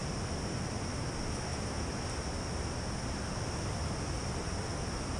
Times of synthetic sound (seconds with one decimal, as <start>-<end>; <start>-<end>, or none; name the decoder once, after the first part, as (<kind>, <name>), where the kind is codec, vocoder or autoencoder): none